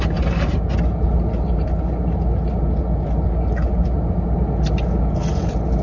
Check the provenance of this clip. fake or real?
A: real